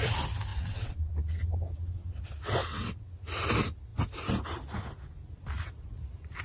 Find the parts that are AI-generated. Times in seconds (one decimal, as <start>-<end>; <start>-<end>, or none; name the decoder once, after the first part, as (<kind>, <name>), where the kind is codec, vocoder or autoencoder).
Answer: 0.5-1.4 (vocoder, WaveNeXt); 2.6-3.1